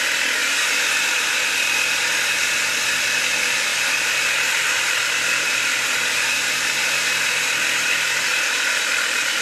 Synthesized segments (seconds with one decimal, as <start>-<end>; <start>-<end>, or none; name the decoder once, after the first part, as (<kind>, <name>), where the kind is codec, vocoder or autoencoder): 0.4-1.5 (vocoder, BigVGAN v2); 3.7-8.9